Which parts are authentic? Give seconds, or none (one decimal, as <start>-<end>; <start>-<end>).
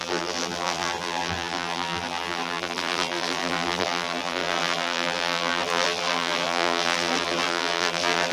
none